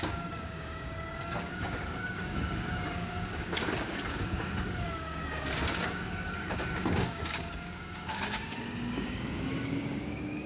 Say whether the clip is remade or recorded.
remade